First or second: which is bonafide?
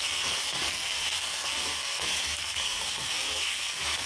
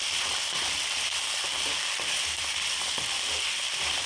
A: second